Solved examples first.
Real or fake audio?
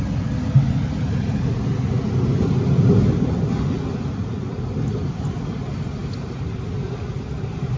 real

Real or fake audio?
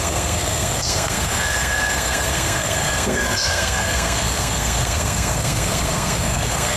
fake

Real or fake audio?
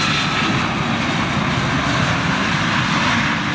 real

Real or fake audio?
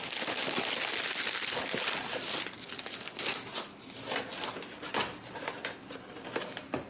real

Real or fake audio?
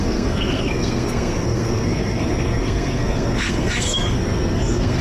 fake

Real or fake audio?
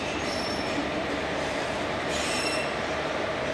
fake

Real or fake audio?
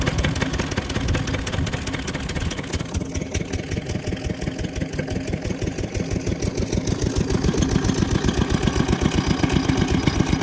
real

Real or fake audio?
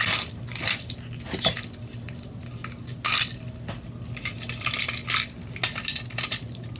real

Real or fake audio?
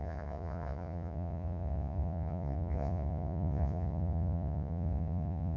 fake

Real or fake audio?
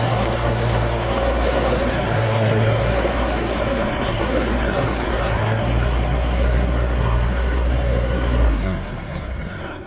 fake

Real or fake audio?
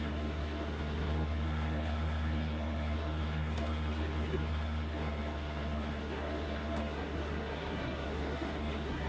fake